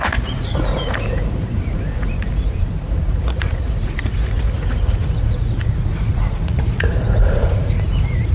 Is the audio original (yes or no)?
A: no